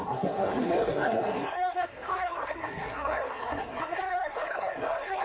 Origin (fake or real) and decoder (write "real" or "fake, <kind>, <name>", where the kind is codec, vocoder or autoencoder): fake, codec, SNAC